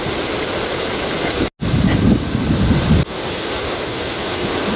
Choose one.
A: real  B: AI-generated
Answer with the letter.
A